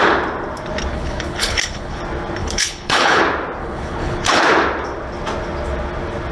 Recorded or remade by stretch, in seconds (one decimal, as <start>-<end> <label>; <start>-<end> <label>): 0.0-0.9 recorded; 0.9-2.0 remade; 2.0-2.4 recorded; 2.4-3.2 remade; 3.2-3.6 recorded; 3.6-4.4 remade; 4.4-6.3 recorded